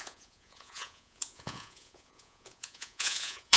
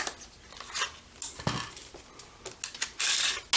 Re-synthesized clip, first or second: first